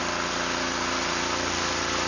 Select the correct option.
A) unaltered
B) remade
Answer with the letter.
A